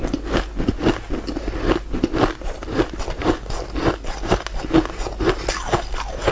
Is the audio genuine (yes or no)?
yes